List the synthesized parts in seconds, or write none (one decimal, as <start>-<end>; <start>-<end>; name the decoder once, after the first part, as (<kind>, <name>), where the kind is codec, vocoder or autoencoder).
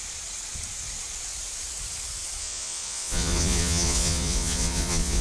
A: 2.4-5.2 (vocoder, Vocos)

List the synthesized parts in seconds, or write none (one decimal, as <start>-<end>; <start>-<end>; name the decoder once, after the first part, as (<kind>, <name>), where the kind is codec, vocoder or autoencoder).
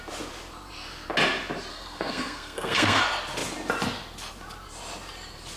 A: 1.7-3.0 (codec, SNAC)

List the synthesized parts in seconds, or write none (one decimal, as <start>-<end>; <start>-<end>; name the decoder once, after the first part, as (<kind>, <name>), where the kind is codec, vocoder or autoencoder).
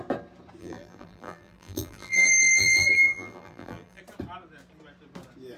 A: 0.6-4.0 (vocoder, BigVGAN v2)